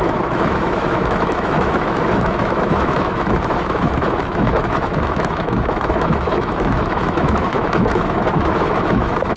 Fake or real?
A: fake